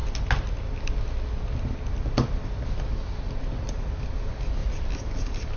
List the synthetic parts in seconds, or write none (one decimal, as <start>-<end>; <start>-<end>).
none